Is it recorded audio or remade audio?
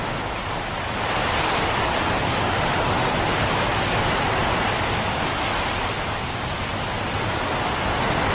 recorded